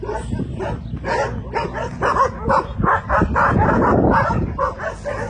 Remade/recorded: recorded